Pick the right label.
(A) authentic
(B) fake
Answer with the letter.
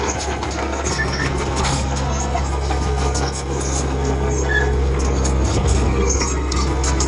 B